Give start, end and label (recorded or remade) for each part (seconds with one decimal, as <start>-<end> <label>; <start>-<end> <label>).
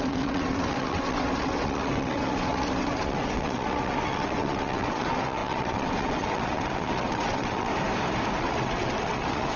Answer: 0.0-7.7 remade; 7.7-8.4 recorded; 8.4-9.6 remade